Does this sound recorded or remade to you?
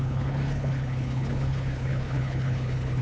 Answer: remade